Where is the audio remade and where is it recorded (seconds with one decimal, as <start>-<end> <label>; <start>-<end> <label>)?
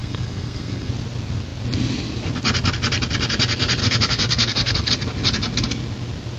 0.0-0.9 remade; 0.9-3.8 recorded; 3.8-4.9 remade; 4.9-6.4 recorded